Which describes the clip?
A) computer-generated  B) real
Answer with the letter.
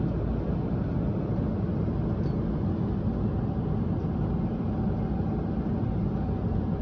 B